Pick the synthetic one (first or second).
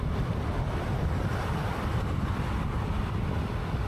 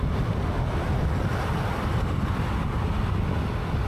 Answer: first